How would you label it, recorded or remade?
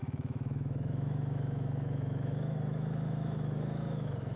remade